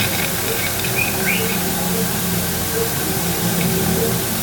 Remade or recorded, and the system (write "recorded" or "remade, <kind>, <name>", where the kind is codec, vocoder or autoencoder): recorded